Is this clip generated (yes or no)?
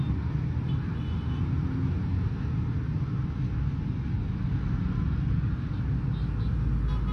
no